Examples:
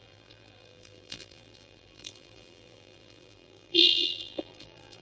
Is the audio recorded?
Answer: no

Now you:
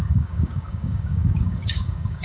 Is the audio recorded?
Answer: no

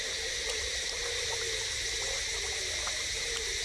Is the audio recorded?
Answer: yes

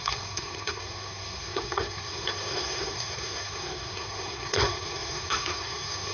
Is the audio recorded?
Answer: no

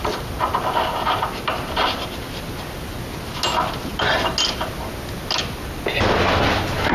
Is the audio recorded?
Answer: yes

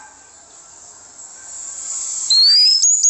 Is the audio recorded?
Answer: yes